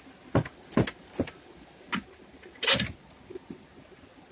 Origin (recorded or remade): recorded